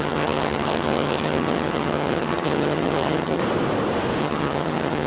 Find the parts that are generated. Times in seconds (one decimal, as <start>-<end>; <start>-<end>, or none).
0.0-3.4; 4.2-5.1